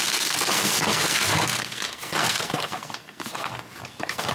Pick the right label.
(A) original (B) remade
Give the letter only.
B